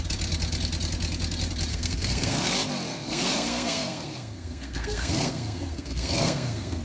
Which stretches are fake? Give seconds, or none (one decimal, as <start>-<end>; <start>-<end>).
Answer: 1.7-2.5; 2.9-6.8